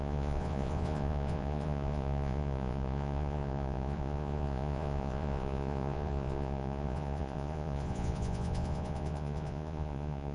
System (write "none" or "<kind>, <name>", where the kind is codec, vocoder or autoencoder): vocoder, Vocos